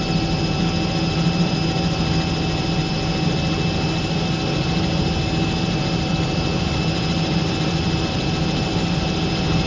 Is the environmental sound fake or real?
fake